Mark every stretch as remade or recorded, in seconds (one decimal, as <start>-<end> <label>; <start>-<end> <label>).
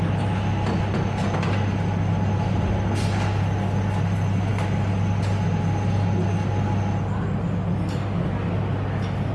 0.0-9.3 recorded